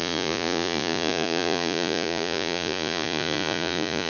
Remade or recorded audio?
remade